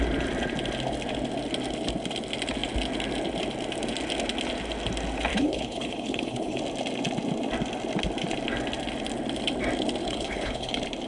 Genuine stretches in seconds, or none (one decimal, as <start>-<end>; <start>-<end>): 0.0-5.3; 6.6-10.0; 10.7-11.1

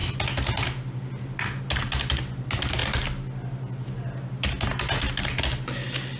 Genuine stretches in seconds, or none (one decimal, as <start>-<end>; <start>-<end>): 0.0-6.2

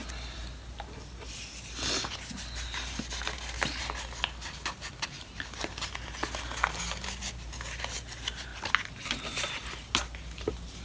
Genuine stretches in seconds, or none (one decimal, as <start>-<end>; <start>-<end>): 0.0-10.8

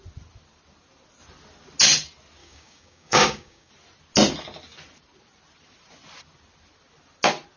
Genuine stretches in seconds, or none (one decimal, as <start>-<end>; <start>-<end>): 0.0-2.4; 3.7-7.6

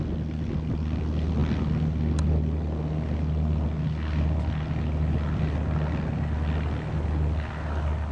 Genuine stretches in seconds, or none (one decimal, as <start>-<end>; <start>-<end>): 0.0-8.1